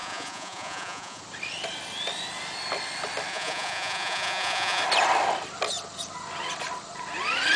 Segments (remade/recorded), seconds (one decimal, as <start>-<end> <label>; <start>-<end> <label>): 0.0-1.2 remade; 1.2-3.3 recorded; 3.3-4.8 remade; 4.8-7.6 recorded